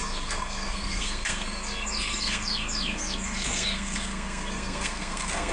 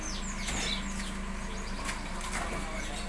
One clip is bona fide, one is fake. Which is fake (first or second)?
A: first